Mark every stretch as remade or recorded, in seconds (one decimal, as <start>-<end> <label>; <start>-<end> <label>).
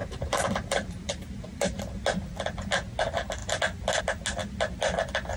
0.0-1.8 remade; 1.8-5.4 recorded